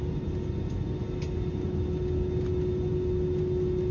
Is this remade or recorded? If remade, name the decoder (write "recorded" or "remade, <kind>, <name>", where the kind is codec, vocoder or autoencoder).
recorded